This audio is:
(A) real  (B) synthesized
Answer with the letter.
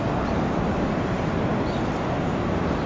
A